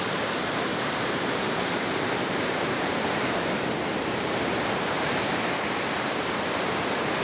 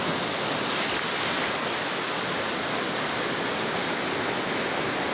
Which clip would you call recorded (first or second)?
second